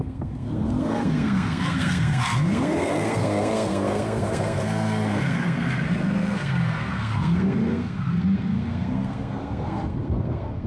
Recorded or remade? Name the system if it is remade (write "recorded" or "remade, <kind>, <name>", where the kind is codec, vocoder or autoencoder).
remade, codec, SNAC